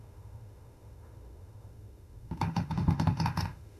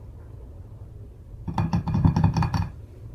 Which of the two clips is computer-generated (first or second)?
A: first